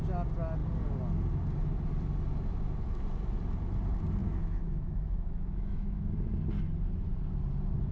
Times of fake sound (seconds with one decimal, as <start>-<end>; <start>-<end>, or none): 4.2-6.1